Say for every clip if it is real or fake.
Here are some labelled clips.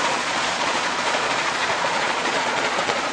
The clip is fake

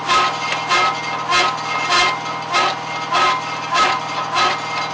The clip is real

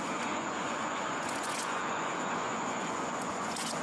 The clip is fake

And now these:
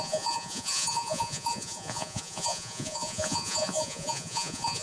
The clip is fake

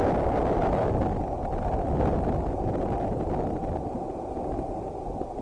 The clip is real